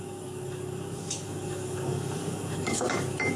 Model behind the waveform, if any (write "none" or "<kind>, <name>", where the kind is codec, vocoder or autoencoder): codec, DAC